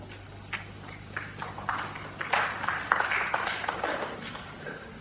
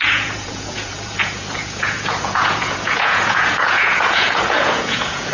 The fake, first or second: second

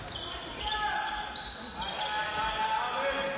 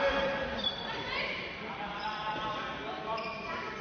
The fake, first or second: second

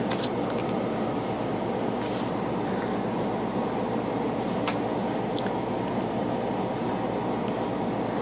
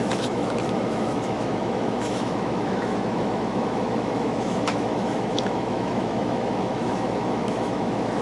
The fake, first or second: second